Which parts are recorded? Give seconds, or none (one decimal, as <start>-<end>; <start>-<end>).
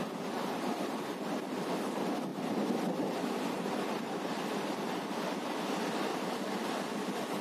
none